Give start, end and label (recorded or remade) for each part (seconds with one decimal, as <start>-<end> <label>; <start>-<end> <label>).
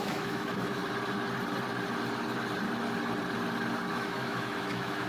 0.0-0.8 remade; 0.8-3.9 recorded; 3.9-5.1 remade